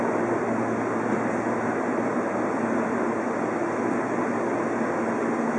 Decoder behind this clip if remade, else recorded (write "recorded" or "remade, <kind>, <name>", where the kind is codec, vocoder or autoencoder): recorded